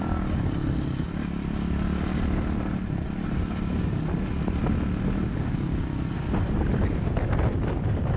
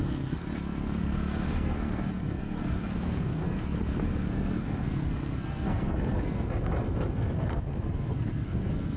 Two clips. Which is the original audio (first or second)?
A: first